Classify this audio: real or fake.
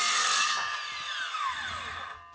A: real